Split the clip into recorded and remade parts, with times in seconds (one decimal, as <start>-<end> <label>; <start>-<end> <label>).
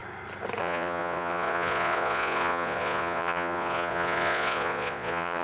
0.0-0.6 recorded; 0.6-5.4 remade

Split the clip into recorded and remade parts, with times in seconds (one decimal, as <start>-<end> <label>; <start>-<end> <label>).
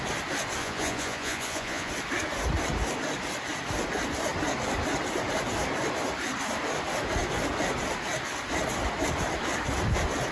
0.0-0.6 recorded; 0.6-1.9 remade; 1.9-10.3 recorded